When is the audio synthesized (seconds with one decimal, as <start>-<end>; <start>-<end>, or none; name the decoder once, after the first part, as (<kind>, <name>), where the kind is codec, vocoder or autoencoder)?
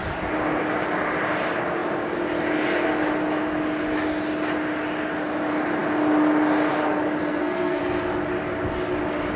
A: 7.2-7.8 (codec, SNAC)